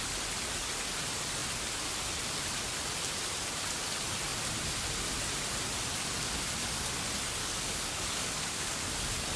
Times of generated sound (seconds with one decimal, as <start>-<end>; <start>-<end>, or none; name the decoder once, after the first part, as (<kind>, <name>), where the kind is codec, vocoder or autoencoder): 7.4-8.9 (codec, DAC)